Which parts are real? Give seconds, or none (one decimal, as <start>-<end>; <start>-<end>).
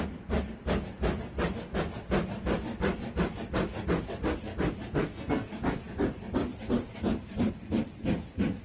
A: 0.0-5.0; 5.5-8.6